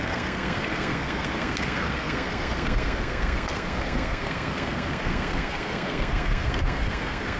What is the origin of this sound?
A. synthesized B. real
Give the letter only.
A